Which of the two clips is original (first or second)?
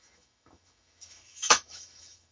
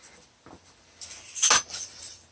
second